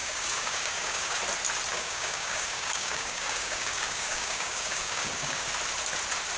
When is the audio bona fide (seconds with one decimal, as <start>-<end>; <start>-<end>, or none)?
1.2-1.7; 5.5-6.4

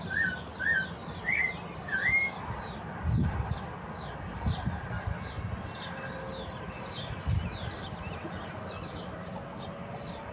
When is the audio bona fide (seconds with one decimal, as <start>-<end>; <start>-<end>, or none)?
0.0-2.0; 2.5-10.3

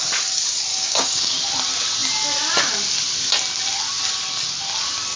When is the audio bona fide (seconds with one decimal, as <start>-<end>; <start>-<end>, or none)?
0.0-0.7; 1.4-5.2